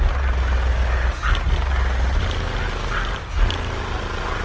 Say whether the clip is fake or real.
real